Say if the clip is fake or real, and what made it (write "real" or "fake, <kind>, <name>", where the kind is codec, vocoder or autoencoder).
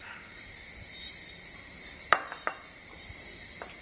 fake, vocoder, BigVGAN v2